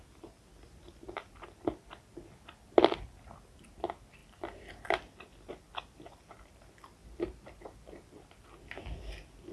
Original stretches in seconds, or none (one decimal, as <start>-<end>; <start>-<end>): 0.0-4.2; 4.8-7.0; 7.6-9.5

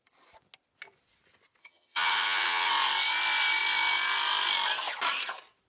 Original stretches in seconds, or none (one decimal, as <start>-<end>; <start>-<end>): 0.0-1.6; 2.7-5.7

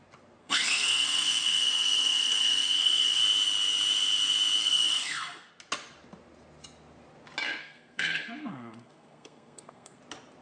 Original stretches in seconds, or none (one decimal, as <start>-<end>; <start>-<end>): 0.0-0.4; 3.2-4.6; 5.5-7.6; 10.0-10.4

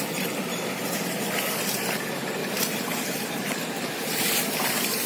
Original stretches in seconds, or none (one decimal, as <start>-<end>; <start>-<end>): none